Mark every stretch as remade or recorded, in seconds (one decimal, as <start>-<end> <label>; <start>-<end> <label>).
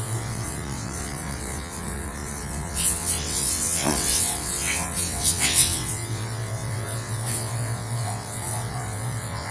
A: 0.0-9.5 remade